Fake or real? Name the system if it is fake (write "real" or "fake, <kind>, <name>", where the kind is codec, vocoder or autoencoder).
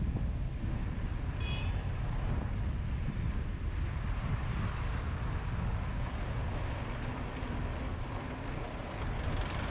real